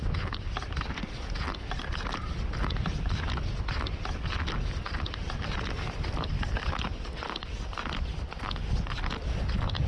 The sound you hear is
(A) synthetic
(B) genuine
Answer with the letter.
B